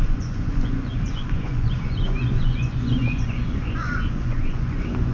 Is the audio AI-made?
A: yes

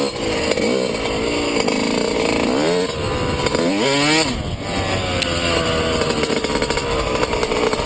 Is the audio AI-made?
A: no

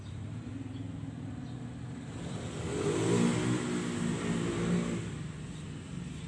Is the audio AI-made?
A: no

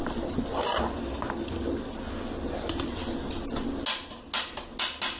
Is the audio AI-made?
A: no